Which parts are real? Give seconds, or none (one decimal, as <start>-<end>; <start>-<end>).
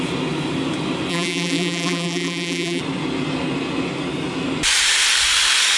0.0-1.1; 2.8-5.8